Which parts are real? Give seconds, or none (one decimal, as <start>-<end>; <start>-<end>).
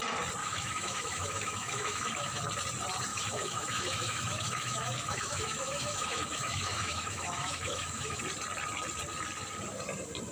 0.0-0.4; 2.4-3.1; 8.2-10.3